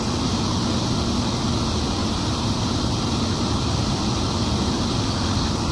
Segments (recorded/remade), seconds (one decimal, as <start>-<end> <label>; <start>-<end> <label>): 0.0-2.0 recorded; 2.0-2.8 remade; 2.8-5.7 recorded